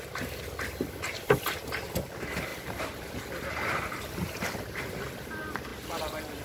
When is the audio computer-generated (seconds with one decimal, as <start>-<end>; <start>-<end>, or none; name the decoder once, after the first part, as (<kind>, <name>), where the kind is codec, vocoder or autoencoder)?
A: 2.5-4.8 (vocoder, BigVGAN v2)

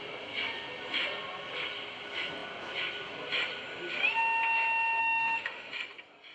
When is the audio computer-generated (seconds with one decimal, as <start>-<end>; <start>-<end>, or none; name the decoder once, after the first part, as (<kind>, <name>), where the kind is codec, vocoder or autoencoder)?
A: 5.0-5.7 (autoencoder, DAC-VAE)

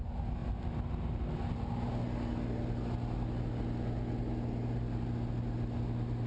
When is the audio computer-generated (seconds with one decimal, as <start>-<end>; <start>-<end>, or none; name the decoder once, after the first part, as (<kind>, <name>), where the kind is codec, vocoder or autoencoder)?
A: none

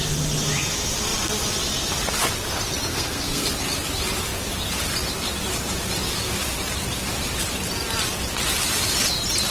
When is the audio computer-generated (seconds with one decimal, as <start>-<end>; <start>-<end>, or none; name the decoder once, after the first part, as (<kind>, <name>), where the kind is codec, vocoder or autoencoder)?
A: 2.9-3.5 (codec, SNAC)

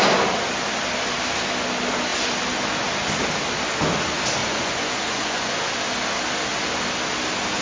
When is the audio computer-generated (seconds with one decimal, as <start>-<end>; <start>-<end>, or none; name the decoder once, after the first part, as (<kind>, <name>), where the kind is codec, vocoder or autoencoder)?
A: 4.4-5.5 (vocoder, Vocos)

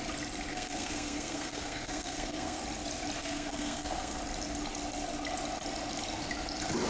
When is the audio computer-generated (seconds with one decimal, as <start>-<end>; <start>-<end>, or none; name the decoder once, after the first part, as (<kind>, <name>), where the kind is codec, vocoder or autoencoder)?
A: 0.5-2.6 (codec, SNAC); 3.2-4.2

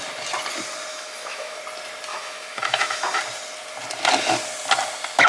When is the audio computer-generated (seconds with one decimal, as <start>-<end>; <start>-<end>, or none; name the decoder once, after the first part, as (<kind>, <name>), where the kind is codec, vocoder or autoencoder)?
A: 0.9-1.6 (autoencoder, DAC-VAE); 2.1-3.2

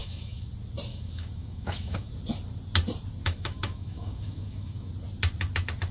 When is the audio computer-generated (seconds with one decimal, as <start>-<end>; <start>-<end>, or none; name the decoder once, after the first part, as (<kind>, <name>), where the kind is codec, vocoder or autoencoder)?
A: 0.0-0.5 (autoencoder, DAC-VAE); 0.9-2.1; 3.2-4.9